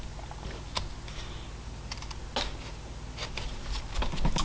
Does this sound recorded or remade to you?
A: recorded